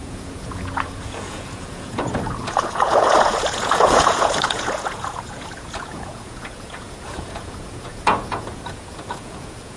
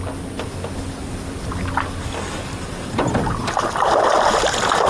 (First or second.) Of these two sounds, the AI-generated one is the first